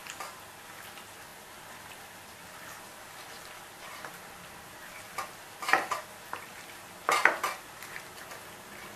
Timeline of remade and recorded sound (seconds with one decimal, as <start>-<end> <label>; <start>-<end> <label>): 0.0-9.0 recorded